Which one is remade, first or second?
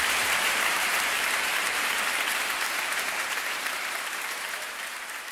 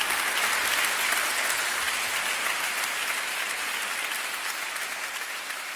first